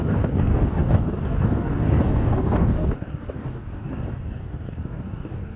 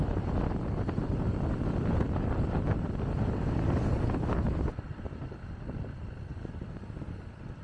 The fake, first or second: first